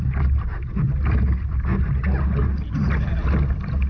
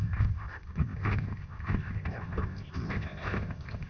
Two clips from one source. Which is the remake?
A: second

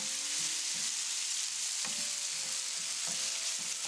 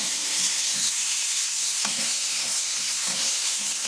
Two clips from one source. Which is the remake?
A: second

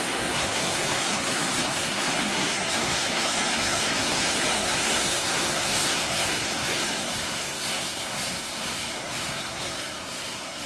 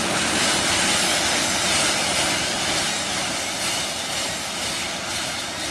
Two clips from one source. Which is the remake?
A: first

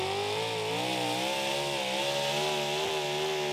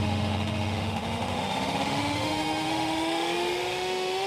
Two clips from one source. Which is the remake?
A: second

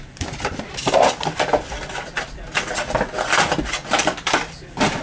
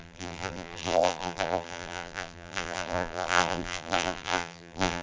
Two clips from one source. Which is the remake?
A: second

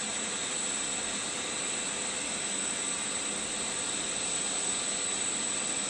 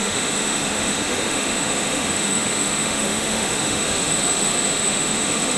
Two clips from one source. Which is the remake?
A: second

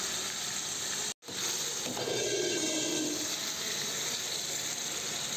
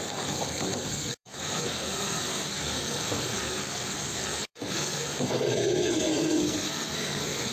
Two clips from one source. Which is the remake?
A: second